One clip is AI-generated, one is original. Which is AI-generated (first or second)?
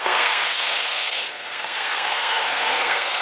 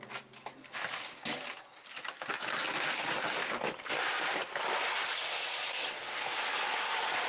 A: first